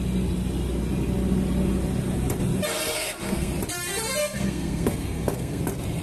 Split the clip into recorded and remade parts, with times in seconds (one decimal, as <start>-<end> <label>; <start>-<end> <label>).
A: 0.0-2.9 recorded; 2.9-3.5 remade; 3.5-4.2 recorded; 4.2-5.6 remade; 5.6-6.0 recorded

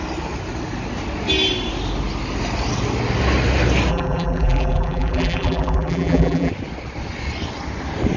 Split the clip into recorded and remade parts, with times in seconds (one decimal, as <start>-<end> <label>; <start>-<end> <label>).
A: 0.0-3.9 recorded; 3.9-6.5 remade; 6.5-8.2 recorded

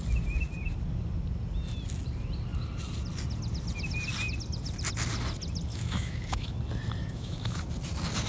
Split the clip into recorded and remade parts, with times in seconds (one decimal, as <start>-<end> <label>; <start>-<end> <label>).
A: 0.0-5.7 recorded; 5.7-6.6 remade; 6.6-7.0 recorded; 7.0-7.6 remade; 7.6-8.3 recorded

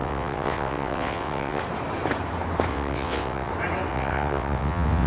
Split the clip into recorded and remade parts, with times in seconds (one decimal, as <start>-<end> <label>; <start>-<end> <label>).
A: 0.0-1.6 remade; 1.6-2.7 recorded; 2.7-3.5 remade; 3.5-3.9 recorded; 3.9-5.1 remade